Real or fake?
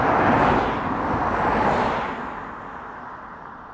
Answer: real